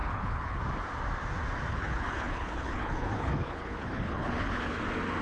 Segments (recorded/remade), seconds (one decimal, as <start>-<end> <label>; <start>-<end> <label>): 0.0-0.6 remade; 0.6-1.7 recorded; 1.7-4.8 remade; 4.8-5.2 recorded